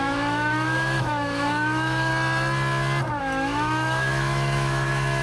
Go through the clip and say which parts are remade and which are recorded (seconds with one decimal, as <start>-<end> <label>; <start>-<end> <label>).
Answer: 0.0-2.1 remade; 2.1-3.2 recorded; 3.2-5.2 remade